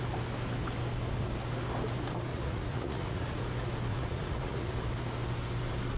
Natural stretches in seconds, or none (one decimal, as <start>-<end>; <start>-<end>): 0.0-2.3; 3.4-3.9; 4.7-6.0